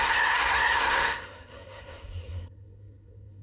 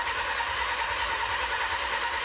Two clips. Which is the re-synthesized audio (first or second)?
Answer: first